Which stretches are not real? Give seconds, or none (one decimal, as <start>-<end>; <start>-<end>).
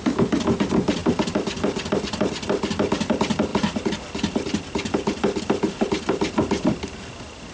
none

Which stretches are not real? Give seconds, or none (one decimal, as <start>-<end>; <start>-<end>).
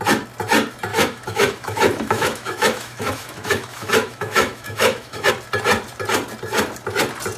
0.9-5.3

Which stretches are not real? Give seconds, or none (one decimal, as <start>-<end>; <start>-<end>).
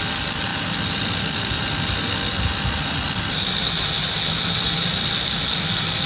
none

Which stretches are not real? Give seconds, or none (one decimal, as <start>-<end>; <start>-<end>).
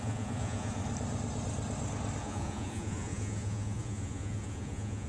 0.0-0.8; 2.2-5.1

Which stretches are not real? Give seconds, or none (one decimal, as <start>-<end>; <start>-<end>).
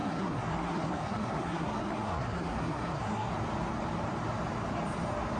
0.0-3.3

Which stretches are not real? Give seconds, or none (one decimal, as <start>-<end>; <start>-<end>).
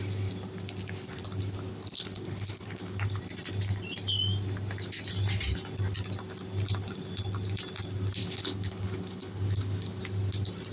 1.7-3.2; 8.2-10.0